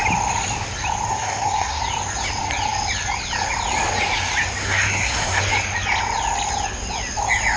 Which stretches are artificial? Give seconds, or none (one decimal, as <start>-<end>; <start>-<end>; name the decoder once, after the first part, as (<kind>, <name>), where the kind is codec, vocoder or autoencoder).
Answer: 1.1-1.8 (codec, SNAC); 4.6-5.4